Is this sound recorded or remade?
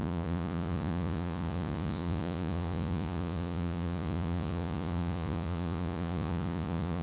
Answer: remade